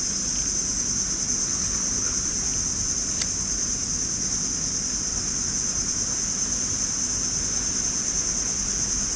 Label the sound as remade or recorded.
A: recorded